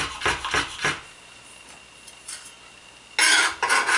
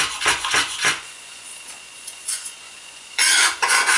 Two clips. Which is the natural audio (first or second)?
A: first